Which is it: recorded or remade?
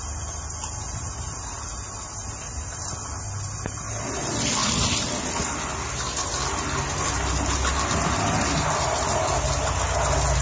recorded